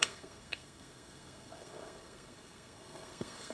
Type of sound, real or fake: fake